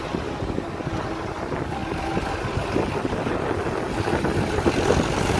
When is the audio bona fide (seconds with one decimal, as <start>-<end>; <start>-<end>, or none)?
0.0-5.4